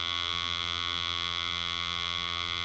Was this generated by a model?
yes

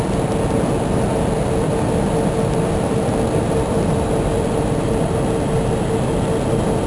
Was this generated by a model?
no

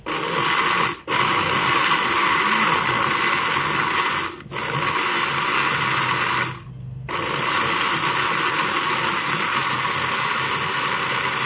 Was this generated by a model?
no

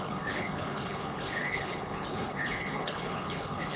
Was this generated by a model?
yes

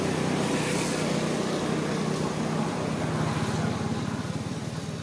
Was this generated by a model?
no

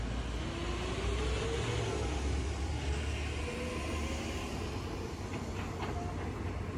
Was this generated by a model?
no